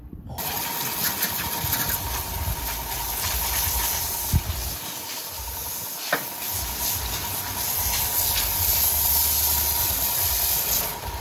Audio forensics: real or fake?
real